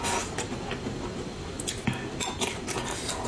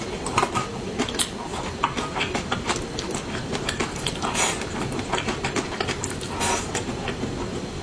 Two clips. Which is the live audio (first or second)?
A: first